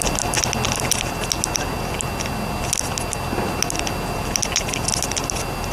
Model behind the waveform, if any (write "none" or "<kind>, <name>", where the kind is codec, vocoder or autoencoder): none